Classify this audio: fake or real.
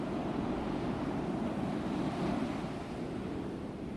real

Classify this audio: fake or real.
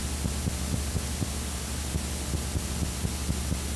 real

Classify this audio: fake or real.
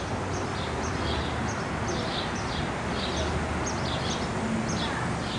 real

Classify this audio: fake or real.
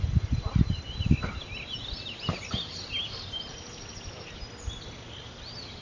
real